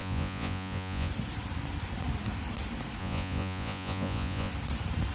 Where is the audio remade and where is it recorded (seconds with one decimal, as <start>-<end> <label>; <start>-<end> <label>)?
0.0-1.1 remade; 1.1-3.0 recorded; 3.0-4.5 remade; 4.5-5.1 recorded